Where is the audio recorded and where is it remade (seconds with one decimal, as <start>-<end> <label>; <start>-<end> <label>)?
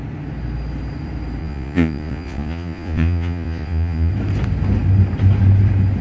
0.0-1.4 recorded; 1.4-4.1 remade; 4.1-6.0 recorded